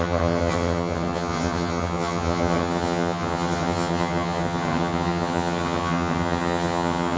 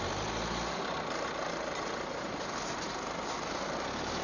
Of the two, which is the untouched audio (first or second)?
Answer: second